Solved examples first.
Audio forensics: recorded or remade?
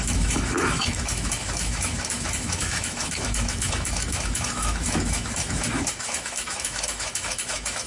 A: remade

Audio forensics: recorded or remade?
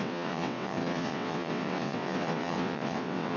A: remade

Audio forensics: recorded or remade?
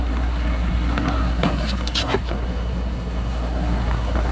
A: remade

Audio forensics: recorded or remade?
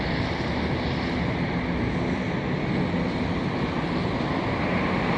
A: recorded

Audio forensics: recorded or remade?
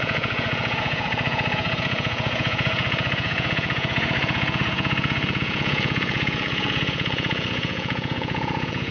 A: remade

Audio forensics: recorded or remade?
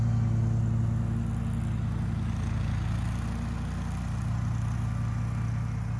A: recorded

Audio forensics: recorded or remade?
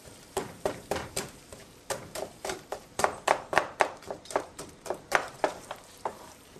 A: remade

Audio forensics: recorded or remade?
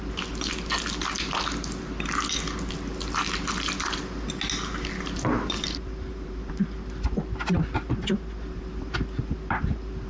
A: recorded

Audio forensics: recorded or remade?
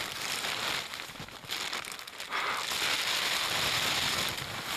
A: recorded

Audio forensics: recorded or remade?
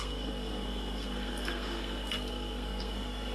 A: remade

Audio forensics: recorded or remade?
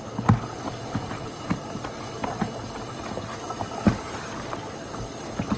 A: recorded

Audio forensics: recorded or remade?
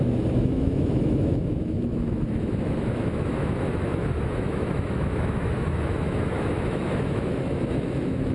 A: remade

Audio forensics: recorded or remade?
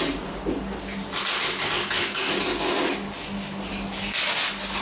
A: recorded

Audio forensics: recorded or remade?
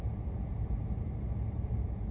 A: recorded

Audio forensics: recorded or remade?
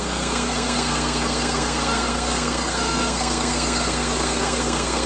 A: remade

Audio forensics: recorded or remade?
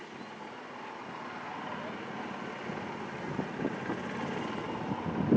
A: recorded